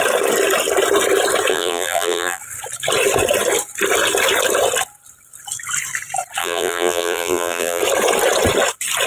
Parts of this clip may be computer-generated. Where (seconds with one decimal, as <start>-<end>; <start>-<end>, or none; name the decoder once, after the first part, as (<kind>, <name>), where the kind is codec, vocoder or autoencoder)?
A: 1.5-2.4 (vocoder, BigVGAN v2); 6.4-7.8